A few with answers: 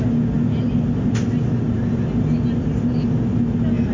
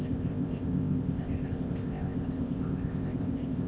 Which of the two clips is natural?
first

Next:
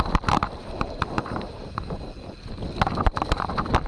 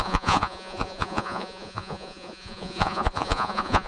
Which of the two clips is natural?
first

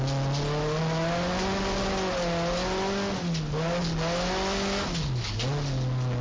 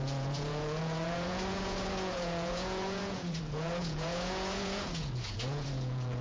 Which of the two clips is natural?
first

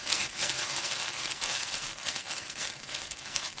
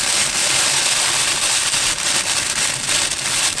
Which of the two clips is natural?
second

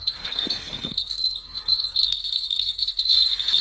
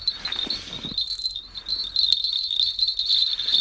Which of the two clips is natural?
second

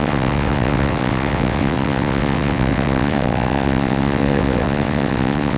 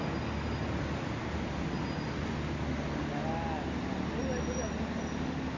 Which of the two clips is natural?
second